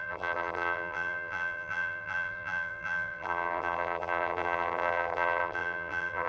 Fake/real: fake